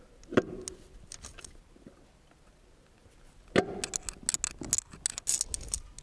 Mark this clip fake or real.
real